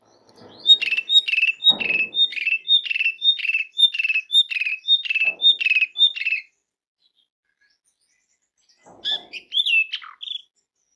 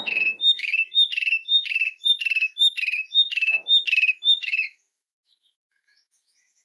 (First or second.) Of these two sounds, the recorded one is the first